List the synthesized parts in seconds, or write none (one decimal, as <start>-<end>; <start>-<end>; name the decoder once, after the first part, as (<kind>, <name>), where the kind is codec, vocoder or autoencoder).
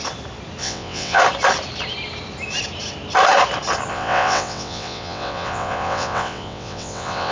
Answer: 0.6-1.2 (vocoder, WaveNeXt); 3.9-7.3